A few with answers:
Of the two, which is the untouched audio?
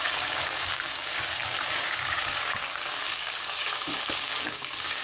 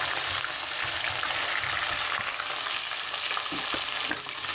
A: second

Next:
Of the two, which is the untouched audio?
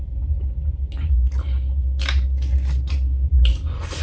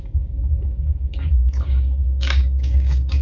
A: first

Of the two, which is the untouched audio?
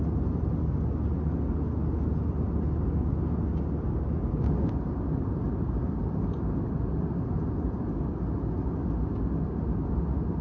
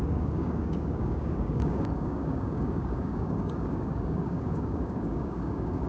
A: first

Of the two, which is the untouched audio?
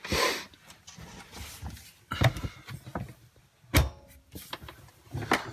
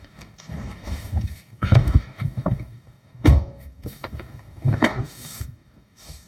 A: first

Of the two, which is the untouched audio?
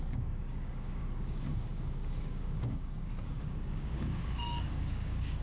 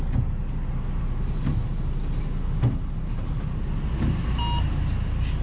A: second